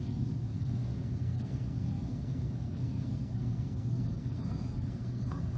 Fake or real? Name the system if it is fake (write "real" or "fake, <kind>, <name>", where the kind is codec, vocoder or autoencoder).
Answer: fake, codec, SNAC